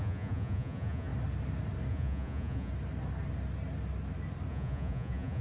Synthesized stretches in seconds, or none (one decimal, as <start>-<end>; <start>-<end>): 0.0-1.1; 1.9-2.7; 4.5-5.4